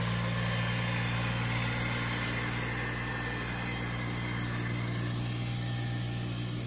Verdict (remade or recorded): recorded